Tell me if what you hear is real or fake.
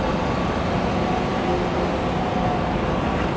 real